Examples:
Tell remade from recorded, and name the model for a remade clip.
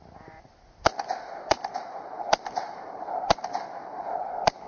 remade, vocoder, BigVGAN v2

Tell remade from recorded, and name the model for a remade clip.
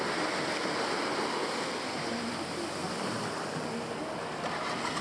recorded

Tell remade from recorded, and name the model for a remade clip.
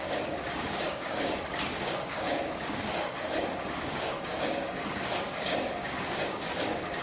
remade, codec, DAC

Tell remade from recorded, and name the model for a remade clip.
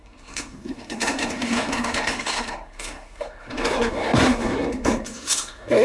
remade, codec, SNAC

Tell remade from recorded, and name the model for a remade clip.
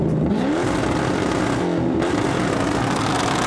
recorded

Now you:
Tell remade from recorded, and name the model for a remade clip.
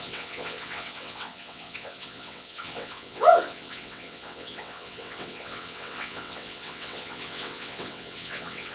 remade, vocoder, WaveNeXt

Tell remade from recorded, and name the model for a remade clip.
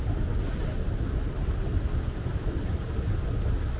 recorded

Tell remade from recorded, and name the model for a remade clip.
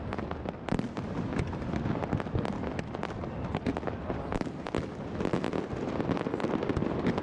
recorded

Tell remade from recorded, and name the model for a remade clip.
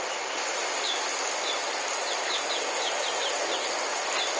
recorded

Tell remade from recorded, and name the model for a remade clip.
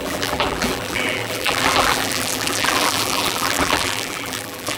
remade, vocoder, BigVGAN v2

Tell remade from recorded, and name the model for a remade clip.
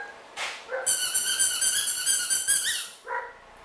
recorded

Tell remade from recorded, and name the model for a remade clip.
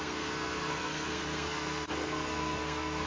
remade, codec, SNAC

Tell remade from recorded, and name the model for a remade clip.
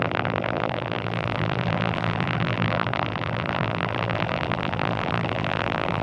remade, vocoder, BigVGAN v2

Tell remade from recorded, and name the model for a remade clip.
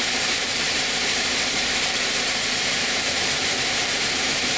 remade, vocoder, BigVGAN v2